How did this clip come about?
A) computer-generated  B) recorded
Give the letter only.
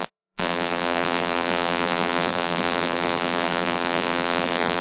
A